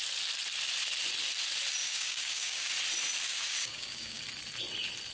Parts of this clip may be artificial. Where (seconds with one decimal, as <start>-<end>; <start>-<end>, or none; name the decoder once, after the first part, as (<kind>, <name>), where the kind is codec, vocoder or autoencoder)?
1.8-2.7 (codec, DAC); 3.3-4.2